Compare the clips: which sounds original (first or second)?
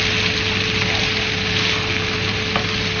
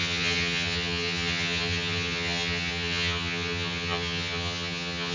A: first